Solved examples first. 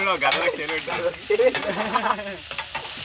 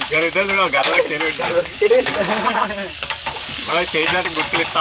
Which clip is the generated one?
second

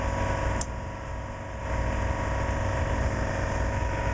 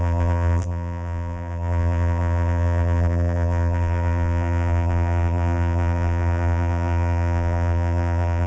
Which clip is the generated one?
second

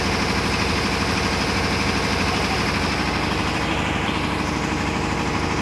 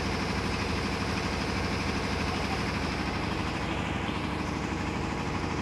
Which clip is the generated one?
second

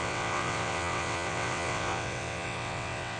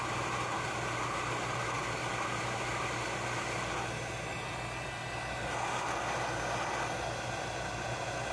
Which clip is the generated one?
first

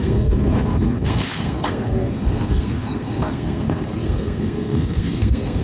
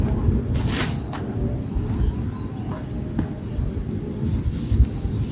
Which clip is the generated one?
first